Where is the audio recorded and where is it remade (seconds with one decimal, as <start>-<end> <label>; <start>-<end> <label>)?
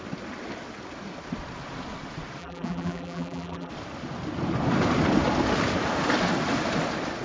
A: 0.0-2.4 recorded; 2.4-3.7 remade; 3.7-7.2 recorded